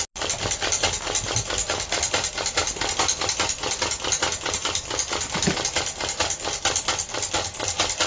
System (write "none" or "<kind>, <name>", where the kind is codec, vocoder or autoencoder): none